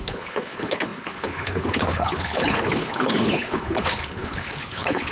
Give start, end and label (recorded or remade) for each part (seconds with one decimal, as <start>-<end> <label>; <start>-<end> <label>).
0.0-5.1 remade